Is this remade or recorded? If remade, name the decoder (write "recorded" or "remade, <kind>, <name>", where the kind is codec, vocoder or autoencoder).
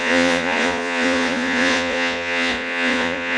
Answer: remade, vocoder, Vocos